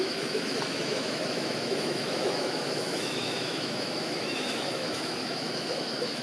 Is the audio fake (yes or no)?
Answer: yes